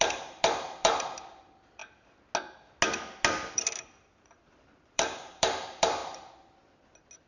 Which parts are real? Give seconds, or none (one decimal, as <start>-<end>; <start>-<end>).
1.8-3.5; 6.0-7.3